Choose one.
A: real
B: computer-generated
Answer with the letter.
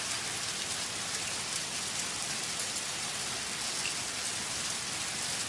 A